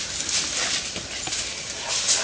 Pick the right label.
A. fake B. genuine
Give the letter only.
B